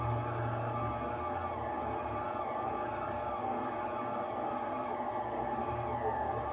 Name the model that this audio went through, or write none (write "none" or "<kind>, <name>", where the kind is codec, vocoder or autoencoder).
none